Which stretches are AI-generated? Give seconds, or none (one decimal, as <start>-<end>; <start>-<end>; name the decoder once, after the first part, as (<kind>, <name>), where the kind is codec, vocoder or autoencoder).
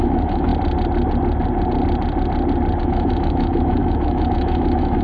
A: 0.0-0.5 (autoencoder, DAC-VAE); 2.8-5.0